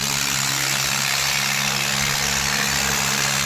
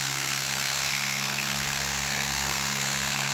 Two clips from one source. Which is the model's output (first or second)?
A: second